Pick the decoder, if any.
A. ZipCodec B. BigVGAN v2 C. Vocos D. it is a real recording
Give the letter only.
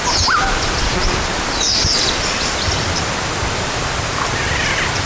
B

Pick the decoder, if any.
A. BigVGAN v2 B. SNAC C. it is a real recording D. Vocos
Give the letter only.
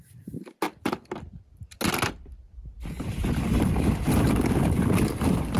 C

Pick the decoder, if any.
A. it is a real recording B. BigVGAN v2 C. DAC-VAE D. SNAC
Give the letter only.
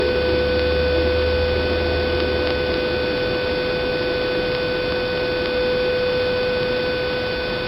A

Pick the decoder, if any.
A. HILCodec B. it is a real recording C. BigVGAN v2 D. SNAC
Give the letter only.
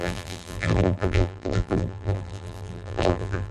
C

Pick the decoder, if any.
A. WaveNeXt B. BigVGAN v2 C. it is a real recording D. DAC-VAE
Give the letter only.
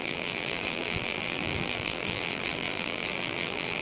B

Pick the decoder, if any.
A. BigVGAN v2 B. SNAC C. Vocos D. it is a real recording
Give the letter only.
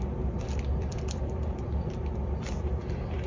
A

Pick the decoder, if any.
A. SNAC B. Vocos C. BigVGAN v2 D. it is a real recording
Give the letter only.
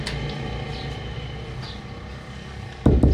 D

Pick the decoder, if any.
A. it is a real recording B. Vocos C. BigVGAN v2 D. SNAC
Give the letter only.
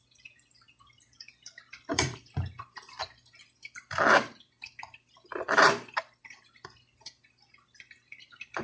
C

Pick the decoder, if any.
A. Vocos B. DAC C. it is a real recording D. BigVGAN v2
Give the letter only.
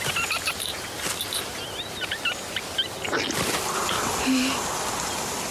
C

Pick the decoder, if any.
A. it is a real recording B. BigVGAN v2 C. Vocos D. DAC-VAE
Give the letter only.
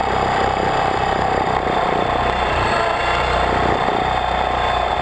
B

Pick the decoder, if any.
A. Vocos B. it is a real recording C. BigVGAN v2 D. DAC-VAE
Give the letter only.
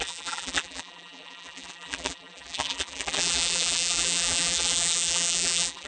C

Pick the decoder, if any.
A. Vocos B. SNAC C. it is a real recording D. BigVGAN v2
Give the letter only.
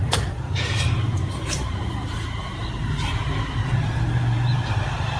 D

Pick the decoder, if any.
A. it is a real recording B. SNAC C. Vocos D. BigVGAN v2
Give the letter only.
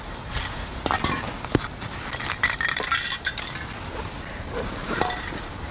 A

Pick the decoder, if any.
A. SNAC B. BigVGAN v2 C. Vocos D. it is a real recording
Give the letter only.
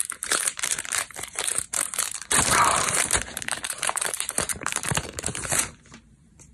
B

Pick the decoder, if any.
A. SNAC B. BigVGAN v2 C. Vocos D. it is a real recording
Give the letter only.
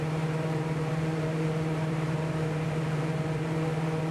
B